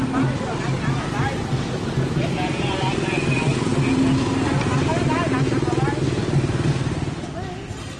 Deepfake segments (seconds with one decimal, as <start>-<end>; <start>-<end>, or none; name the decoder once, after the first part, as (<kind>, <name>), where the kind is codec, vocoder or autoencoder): none